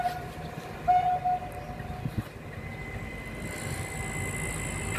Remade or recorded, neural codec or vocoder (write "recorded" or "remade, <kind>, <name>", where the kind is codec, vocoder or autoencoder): recorded